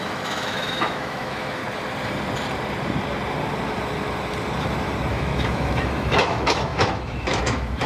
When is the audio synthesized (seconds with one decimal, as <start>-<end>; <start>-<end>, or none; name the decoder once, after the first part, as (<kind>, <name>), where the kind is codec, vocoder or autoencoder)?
0.0-1.6 (autoencoder, DAC-VAE); 5.1-7.9